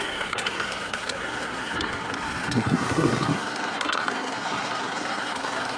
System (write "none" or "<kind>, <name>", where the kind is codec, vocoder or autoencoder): codec, SNAC